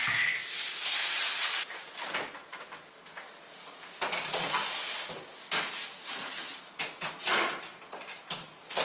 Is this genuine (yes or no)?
yes